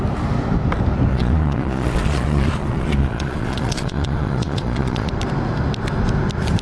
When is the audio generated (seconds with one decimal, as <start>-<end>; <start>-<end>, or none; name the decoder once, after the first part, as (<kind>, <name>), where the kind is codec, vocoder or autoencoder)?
1.1-5.1 (vocoder, Vocos)